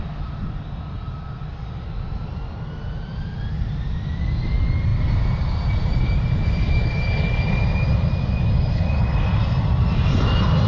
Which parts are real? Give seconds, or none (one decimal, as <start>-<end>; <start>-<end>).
0.0-10.7